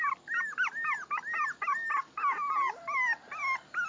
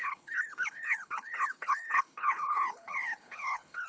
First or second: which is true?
first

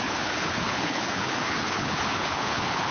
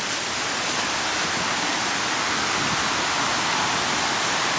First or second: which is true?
second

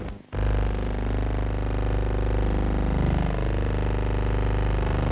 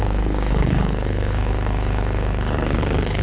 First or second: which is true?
first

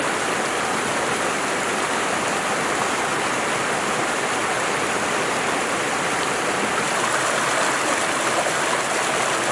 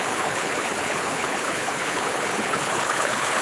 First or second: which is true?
first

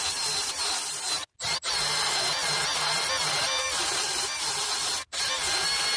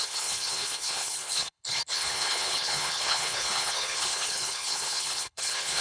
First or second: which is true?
first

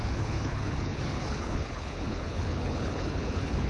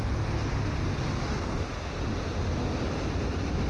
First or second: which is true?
second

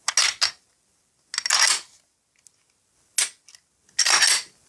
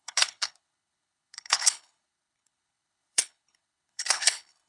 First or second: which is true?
first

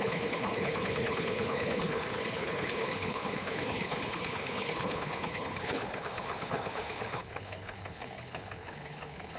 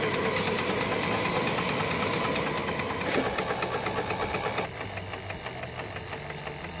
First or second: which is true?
second